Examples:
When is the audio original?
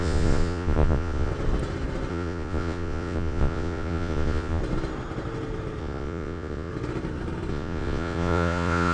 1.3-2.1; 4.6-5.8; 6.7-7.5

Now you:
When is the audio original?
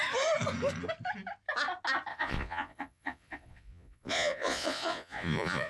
0.0-2.1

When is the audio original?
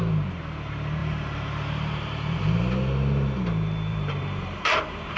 0.0-1.0; 2.7-3.9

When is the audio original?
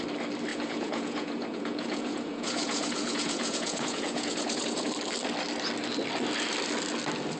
0.0-0.5; 4.9-7.4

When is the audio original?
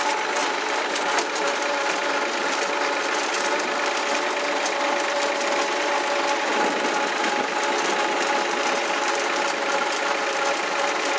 0.0-0.4; 4.3-6.5; 7.2-11.2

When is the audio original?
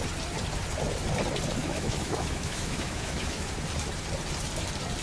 0.0-1.6; 3.5-5.0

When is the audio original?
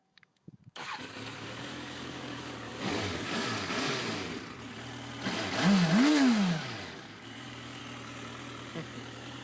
4.3-6.1; 7.8-8.7